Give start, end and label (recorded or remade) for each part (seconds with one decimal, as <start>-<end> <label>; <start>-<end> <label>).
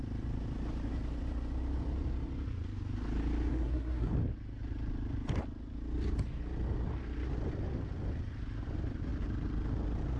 0.0-3.5 recorded; 3.5-4.1 remade; 4.1-10.2 recorded